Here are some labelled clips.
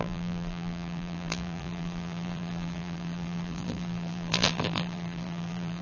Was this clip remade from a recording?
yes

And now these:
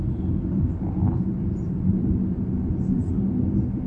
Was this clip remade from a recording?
no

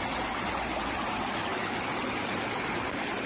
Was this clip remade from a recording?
no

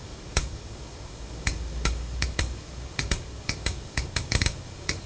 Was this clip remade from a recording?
yes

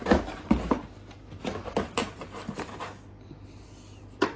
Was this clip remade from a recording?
no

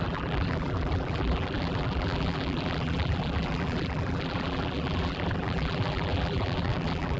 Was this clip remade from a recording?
yes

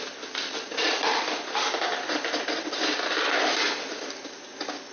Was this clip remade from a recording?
no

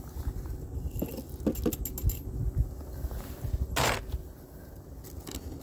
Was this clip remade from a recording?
no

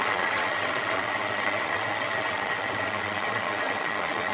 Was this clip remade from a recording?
yes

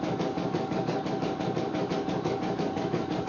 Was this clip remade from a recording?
yes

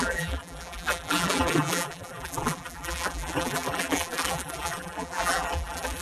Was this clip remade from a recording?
yes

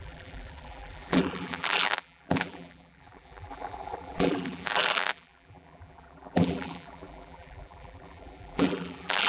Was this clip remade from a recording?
yes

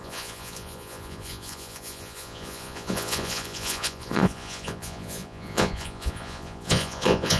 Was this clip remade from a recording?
yes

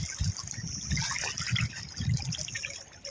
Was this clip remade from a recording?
no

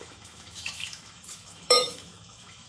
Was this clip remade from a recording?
yes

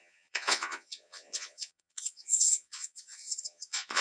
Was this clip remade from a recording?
yes